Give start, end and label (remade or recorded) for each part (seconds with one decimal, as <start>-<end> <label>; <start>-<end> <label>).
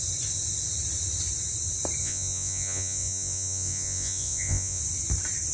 0.0-2.0 recorded; 2.0-4.8 remade; 4.8-5.5 recorded